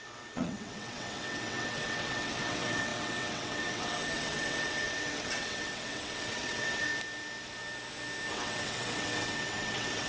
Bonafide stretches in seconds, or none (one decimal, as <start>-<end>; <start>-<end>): 6.9-8.3